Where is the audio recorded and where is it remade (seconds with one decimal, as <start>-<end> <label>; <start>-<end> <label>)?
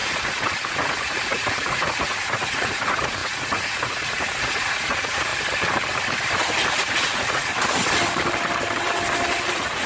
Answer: 0.0-5.3 remade; 5.3-6.7 recorded; 6.7-7.5 remade; 7.5-9.5 recorded; 9.5-9.9 remade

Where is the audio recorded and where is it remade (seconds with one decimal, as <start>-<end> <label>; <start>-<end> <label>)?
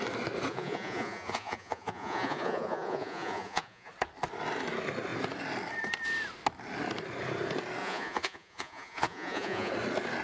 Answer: 0.0-0.5 recorded; 0.5-3.9 remade; 3.9-7.8 recorded; 7.8-9.7 remade; 9.7-10.2 recorded